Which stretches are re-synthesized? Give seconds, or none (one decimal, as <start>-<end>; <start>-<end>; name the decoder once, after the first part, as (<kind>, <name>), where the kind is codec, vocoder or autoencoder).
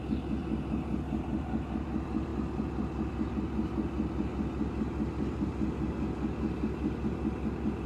none